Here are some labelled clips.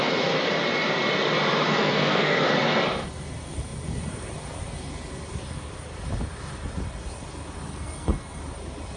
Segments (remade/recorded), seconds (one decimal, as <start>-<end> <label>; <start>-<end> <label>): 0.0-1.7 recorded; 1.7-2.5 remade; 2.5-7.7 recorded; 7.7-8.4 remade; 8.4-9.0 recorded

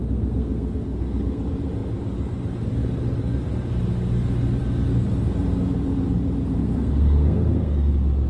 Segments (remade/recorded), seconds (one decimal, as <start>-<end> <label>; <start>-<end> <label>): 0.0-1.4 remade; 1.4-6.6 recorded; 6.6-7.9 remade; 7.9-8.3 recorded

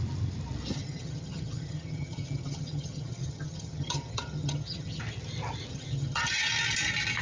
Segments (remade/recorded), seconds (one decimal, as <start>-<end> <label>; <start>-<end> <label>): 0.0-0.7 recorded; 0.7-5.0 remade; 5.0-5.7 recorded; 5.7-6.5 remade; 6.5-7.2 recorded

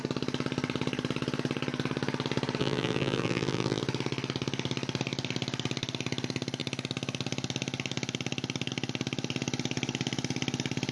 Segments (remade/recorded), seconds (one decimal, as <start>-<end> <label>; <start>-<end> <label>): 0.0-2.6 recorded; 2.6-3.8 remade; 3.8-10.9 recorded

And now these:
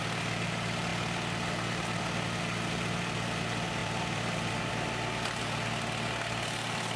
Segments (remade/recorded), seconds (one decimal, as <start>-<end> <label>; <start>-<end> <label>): 0.0-3.8 recorded; 3.8-4.7 remade; 4.7-7.0 recorded